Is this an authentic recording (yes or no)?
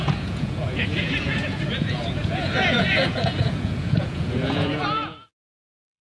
no